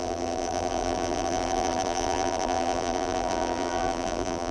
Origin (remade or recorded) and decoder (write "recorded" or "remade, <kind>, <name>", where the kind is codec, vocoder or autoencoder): remade, vocoder, BigVGAN v2